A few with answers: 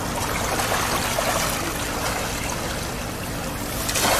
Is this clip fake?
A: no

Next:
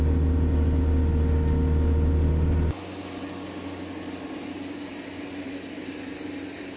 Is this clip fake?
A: no